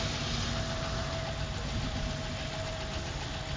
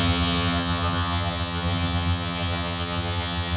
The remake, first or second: second